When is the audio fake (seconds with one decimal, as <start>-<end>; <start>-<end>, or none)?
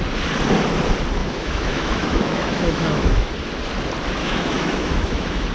1.2-3.3; 4.2-5.5